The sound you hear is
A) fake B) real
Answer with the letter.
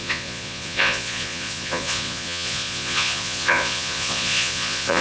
A